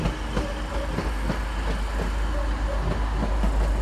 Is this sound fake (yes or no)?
no